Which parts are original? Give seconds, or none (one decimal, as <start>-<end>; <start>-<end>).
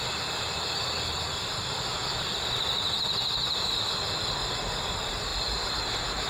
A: 0.0-6.3